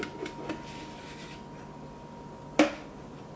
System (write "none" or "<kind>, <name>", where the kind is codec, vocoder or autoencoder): none